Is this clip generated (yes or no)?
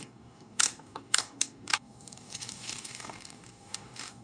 yes